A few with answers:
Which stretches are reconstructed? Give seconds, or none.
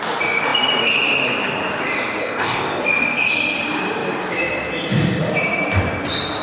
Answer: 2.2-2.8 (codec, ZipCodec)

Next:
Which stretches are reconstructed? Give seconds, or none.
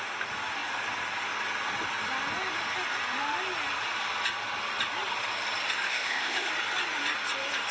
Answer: 5.9-6.5 (codec, ZipCodec)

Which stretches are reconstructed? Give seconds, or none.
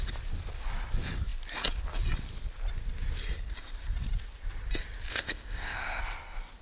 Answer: 5.1-6.0 (codec, ZipCodec)